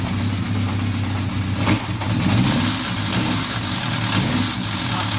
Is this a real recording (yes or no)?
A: yes